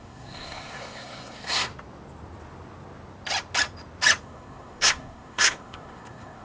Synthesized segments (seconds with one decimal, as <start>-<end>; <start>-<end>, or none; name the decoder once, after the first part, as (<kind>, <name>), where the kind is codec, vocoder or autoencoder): 0.0-1.7 (codec, SNAC); 4.2-6.4